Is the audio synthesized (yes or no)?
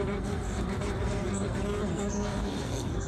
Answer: yes